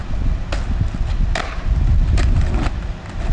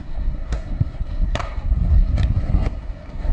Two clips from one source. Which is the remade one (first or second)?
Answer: second